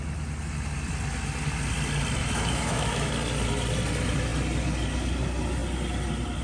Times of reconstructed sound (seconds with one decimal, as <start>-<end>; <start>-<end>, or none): 2.2-3.1